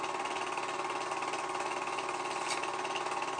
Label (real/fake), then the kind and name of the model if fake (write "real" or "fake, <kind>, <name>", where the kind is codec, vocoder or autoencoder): real